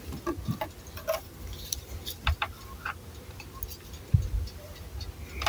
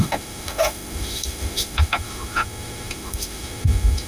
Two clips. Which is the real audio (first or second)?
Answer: first